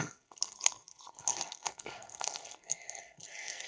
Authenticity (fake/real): fake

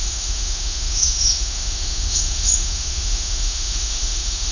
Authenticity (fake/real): fake